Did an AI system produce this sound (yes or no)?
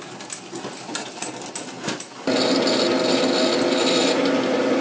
no